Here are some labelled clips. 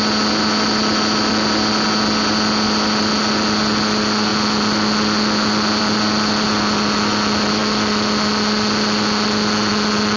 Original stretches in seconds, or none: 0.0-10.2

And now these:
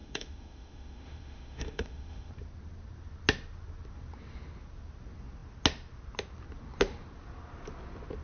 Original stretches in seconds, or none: 2.3-8.2

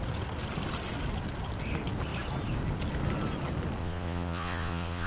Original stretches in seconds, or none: 0.0-3.8

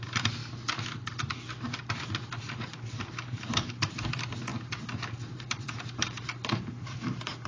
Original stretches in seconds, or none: 0.4-2.3; 4.5-5.1

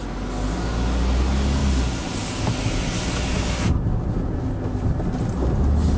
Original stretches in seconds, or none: 0.0-6.0

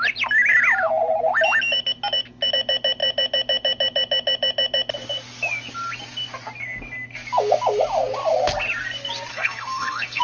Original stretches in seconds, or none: 0.0-9.3